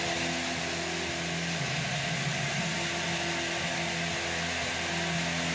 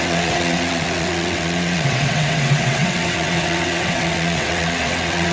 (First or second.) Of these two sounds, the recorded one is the first